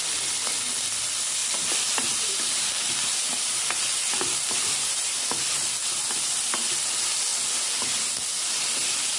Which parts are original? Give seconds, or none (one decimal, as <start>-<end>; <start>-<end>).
0.0-1.4; 5.3-9.2